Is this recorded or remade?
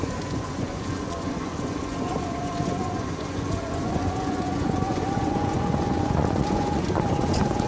remade